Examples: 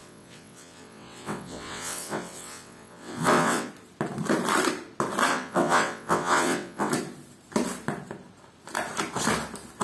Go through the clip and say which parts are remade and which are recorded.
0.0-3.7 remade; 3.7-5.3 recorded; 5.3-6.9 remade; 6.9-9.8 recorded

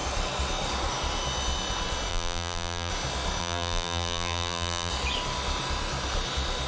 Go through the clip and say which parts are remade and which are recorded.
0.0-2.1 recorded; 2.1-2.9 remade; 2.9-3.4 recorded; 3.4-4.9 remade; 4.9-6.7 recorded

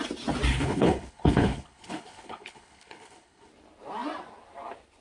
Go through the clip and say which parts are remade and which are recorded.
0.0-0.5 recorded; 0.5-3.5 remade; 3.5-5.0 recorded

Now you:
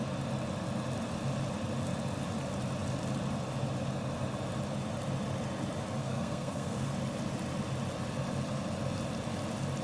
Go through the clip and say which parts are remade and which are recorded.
0.0-6.0 recorded; 6.0-6.9 remade; 6.9-9.8 recorded

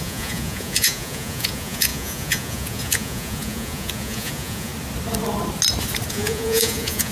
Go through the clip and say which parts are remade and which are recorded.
0.0-4.7 remade; 4.7-6.1 recorded; 6.1-7.1 remade

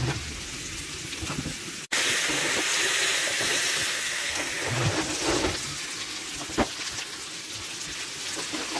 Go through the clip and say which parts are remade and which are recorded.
0.0-3.9 recorded; 3.9-4.5 remade; 4.5-8.8 recorded

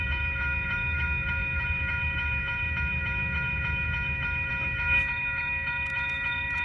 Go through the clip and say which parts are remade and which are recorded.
0.0-6.6 remade

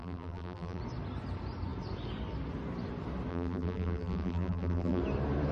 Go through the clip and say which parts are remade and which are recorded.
0.0-0.8 remade; 0.8-3.3 recorded; 3.3-5.0 remade; 5.0-5.5 recorded